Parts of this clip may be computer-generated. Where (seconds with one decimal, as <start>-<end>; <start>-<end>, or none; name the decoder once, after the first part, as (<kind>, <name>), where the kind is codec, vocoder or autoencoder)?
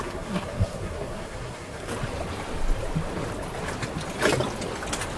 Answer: 0.0-1.9 (codec, SNAC)